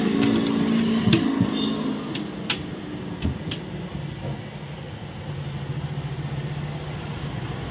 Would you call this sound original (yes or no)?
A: yes